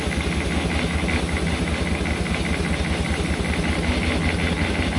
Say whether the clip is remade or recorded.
recorded